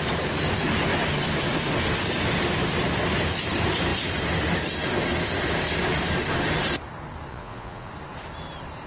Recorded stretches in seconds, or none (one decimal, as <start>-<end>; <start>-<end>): 0.0-7.3; 7.9-8.9